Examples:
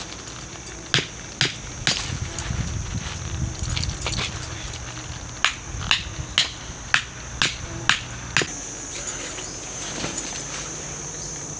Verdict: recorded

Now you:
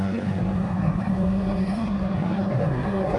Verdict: remade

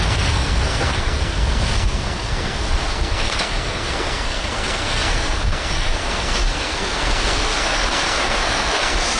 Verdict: remade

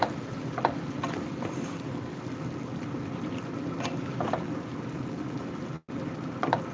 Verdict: recorded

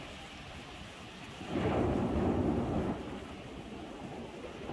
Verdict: recorded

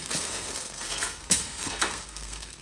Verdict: remade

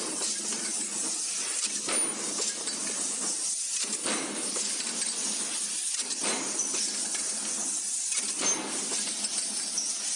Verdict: recorded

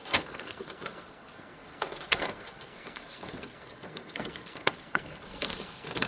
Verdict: remade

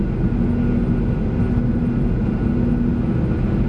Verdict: recorded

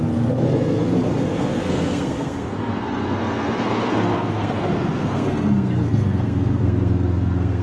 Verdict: remade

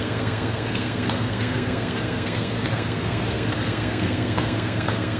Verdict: remade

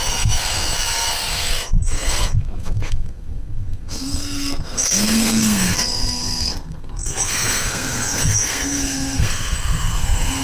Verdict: remade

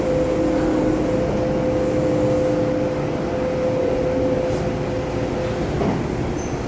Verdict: recorded